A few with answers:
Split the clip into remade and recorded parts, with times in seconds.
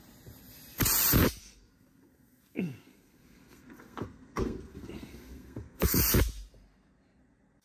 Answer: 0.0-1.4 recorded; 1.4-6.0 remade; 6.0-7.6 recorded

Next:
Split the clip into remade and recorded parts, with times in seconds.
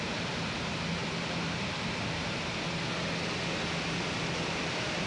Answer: 0.0-5.1 recorded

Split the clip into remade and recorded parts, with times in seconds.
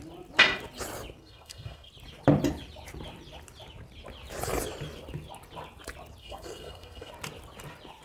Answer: 0.0-1.2 recorded; 1.2-1.9 remade; 1.9-6.2 recorded; 6.2-7.1 remade; 7.1-8.0 recorded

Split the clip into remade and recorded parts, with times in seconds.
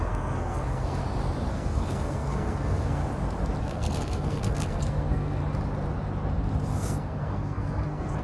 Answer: 0.0-1.0 remade; 1.0-1.5 recorded; 1.5-3.0 remade; 3.0-3.6 recorded; 3.6-5.4 remade; 5.4-6.7 recorded; 6.7-8.2 remade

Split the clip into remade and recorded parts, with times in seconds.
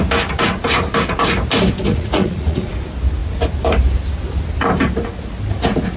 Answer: 0.0-1.9 recorded; 1.9-2.7 remade; 2.7-6.0 recorded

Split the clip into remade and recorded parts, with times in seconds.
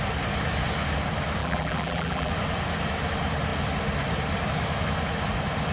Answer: 0.0-1.4 recorded; 1.4-2.3 remade; 2.3-5.7 recorded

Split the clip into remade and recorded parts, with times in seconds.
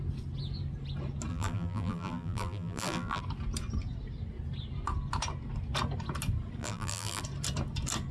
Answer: 0.0-1.3 recorded; 1.3-3.2 remade; 3.2-6.6 recorded; 6.6-7.2 remade; 7.2-8.1 recorded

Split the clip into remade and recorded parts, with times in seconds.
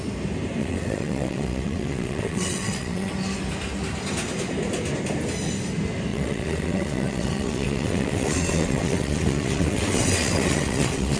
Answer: 0.0-0.6 recorded; 0.6-3.1 remade; 3.1-6.1 recorded; 6.1-11.2 remade